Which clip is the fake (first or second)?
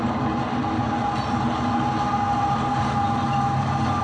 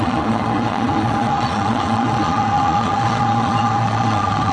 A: second